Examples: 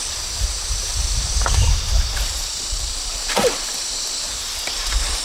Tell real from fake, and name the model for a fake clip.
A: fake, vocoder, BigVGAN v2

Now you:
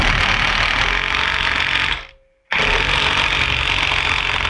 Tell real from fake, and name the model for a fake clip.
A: real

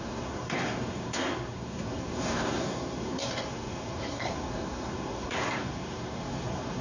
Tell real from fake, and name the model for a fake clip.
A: fake, codec, SNAC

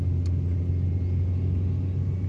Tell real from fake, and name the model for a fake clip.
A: real